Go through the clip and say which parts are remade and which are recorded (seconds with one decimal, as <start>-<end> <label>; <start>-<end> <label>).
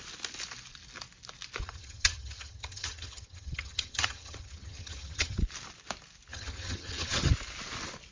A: 0.0-1.6 recorded; 1.6-5.4 remade; 5.4-6.3 recorded; 6.3-7.3 remade; 7.3-8.1 recorded